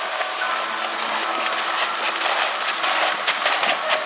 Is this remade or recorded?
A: recorded